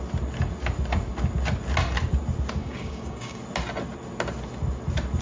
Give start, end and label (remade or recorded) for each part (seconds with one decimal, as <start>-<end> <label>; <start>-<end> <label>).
0.0-2.6 recorded; 2.6-3.4 remade; 3.4-5.2 recorded